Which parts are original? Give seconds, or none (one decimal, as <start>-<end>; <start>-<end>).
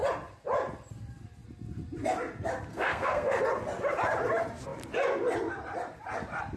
0.0-2.7; 3.4-6.6